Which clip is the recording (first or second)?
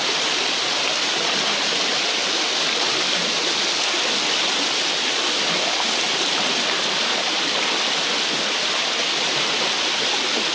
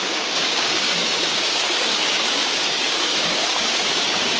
first